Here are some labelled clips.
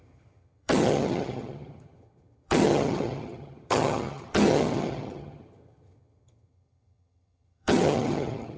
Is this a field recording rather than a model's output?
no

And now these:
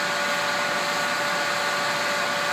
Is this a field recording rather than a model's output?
yes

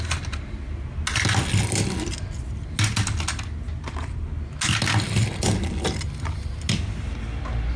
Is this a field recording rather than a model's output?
yes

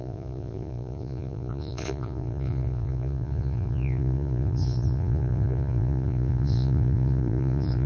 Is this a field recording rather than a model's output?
no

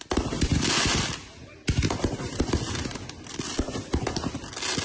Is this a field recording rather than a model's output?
yes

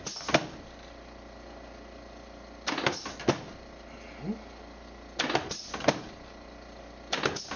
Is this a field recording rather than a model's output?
yes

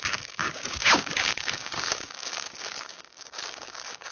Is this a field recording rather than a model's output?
no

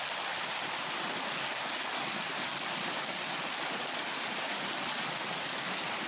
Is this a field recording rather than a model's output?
yes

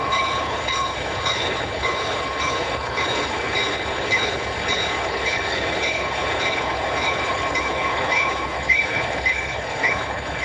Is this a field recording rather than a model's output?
no